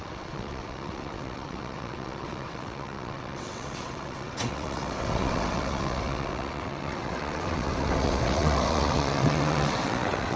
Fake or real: fake